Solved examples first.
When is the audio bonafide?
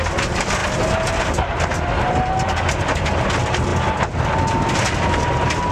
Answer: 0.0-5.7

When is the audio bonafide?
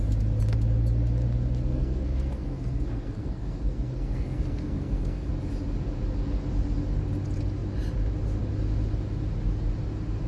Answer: 0.0-1.7; 5.3-10.3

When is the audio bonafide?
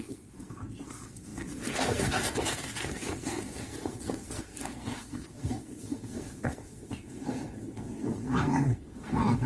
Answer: none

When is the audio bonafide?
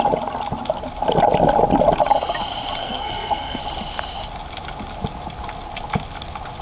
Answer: 0.0-2.8; 3.6-6.6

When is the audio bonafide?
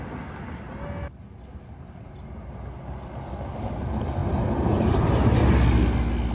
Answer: 0.0-6.3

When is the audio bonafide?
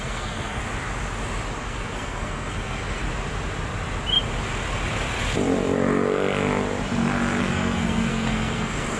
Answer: 0.6-1.6; 3.0-7.4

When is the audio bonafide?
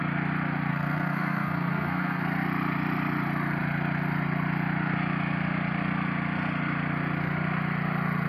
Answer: 0.0-0.7; 2.2-8.3